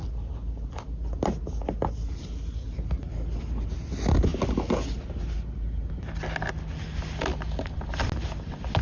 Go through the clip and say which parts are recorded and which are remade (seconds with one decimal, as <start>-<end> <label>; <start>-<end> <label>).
0.0-8.8 recorded